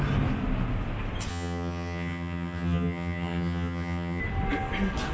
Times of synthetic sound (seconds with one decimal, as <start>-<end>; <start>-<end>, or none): 1.3-4.2